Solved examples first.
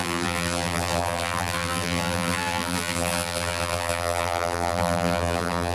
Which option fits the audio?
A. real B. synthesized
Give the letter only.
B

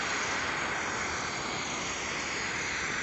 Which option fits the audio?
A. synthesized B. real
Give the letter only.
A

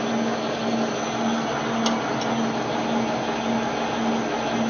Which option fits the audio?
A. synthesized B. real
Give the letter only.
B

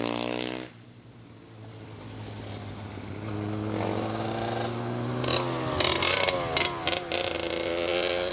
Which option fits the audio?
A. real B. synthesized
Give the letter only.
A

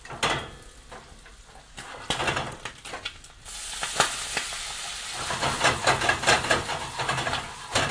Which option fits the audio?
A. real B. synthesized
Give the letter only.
A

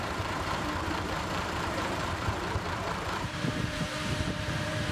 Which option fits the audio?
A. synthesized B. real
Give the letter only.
A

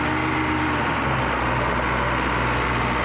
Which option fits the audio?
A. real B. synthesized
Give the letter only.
A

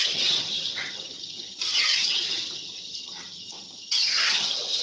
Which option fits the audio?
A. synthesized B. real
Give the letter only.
A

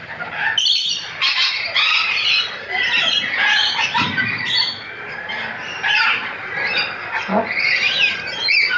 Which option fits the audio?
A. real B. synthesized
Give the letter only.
A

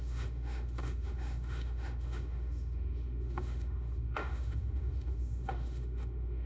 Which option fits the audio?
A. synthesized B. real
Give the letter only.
A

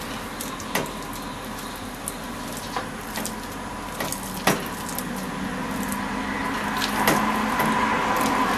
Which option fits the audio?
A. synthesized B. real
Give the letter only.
B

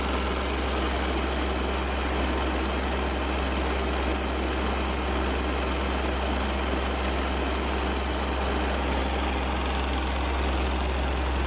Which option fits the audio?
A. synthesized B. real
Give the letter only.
B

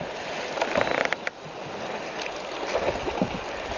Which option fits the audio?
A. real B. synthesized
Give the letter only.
A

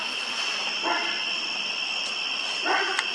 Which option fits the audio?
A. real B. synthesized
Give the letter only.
A